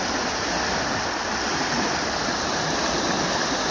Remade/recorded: recorded